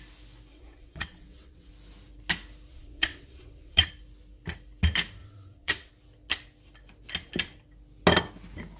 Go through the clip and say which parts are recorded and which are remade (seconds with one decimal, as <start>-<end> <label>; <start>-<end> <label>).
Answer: 0.0-0.5 recorded; 0.5-1.7 remade; 1.7-2.7 recorded; 2.7-3.9 remade; 3.9-5.2 recorded; 5.2-5.9 remade; 5.9-8.8 recorded